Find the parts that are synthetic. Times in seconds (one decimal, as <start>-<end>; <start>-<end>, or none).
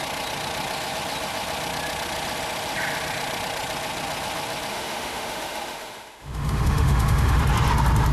4.7-7.4